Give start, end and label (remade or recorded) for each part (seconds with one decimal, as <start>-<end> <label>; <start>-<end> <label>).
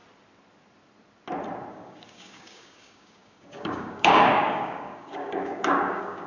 0.0-1.7 recorded; 1.7-6.3 remade